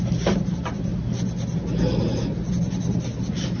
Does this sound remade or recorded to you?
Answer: recorded